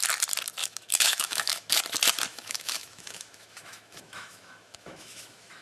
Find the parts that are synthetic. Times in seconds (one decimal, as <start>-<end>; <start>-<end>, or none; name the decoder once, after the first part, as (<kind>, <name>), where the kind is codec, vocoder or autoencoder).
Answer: 0.6-1.8 (autoencoder, DAC-VAE); 2.3-5.6

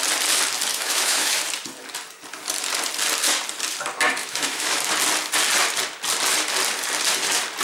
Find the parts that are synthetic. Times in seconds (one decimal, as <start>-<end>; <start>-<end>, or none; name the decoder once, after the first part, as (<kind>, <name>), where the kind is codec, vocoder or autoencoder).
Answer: 0.7-1.4 (autoencoder, DAC-VAE); 4.2-4.8

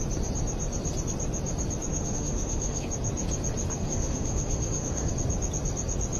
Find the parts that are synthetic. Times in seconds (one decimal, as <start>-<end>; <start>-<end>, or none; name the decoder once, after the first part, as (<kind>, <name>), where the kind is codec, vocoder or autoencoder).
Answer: 1.9-2.9 (autoencoder, DAC-VAE); 3.8-5.1